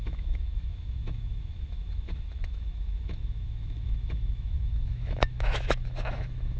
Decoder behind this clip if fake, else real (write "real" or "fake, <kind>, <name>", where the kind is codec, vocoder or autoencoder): fake, autoencoder, DAC-VAE